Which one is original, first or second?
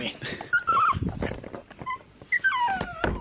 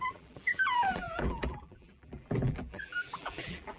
first